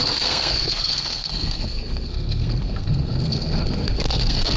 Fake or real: fake